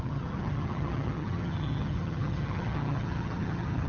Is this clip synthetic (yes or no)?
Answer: yes